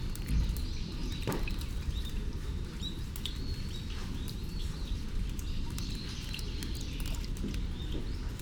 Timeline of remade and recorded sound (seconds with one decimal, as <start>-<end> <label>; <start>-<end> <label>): 0.0-1.0 recorded; 1.0-3.0 remade; 3.0-4.0 recorded; 4.0-6.4 remade; 6.4-8.4 recorded